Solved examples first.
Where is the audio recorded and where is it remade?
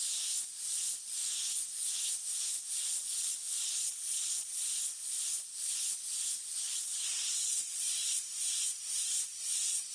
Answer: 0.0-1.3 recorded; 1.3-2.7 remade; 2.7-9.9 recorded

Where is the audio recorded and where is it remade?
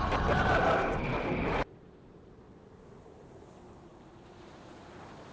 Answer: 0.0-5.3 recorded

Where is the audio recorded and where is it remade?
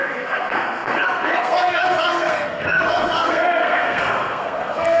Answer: 0.0-5.0 remade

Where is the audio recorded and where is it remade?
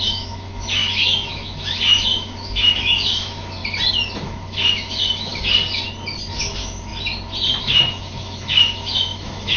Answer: 0.0-3.6 remade; 3.6-4.2 recorded; 4.2-5.3 remade; 5.3-6.4 recorded; 6.4-6.9 remade; 6.9-7.6 recorded; 7.6-9.6 remade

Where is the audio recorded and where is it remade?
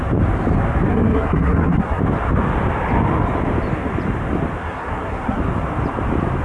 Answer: 0.0-0.9 recorded; 0.9-2.0 remade; 2.0-4.6 recorded; 4.6-5.4 remade; 5.4-6.4 recorded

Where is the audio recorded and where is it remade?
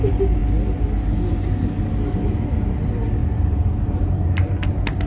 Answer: 0.0-3.2 recorded; 3.2-4.5 remade; 4.5-5.1 recorded